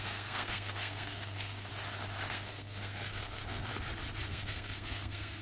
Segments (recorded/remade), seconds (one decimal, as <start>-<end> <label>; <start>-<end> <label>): 0.0-1.7 remade; 1.7-2.3 recorded; 2.3-3.7 remade; 3.7-4.3 recorded; 4.3-5.4 remade